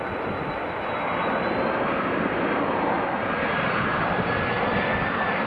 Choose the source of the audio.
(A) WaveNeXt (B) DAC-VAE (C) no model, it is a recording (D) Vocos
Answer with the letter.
C